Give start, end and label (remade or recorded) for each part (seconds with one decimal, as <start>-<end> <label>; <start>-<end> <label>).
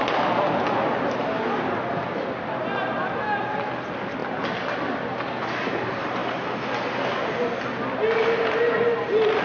0.0-9.4 recorded